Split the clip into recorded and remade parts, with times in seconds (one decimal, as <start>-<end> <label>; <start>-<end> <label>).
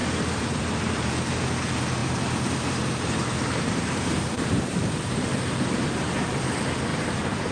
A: 0.0-1.1 remade; 1.1-2.0 recorded; 2.0-4.9 remade; 4.9-6.9 recorded; 6.9-7.5 remade